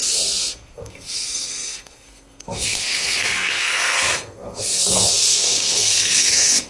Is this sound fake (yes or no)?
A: yes